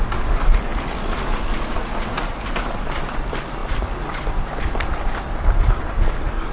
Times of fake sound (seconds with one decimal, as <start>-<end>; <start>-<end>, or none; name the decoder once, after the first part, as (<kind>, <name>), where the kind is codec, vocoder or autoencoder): none